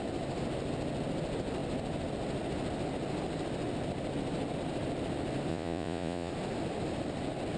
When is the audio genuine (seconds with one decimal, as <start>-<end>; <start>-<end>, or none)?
0.0-5.5; 6.3-7.6

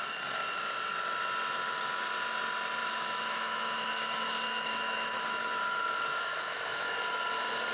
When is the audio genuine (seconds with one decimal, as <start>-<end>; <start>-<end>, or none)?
0.0-2.8; 7.0-7.7

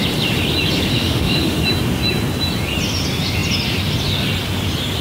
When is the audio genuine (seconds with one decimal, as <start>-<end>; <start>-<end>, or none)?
0.0-0.9; 1.6-5.0

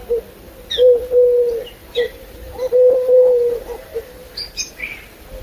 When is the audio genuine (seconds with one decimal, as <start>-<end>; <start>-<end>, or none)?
0.0-1.8; 5.0-5.4